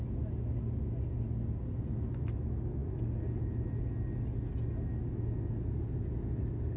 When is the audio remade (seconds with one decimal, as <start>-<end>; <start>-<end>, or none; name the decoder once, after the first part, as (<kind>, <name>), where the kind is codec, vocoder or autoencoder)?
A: none